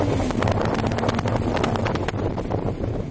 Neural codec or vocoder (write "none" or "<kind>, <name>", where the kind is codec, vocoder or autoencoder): none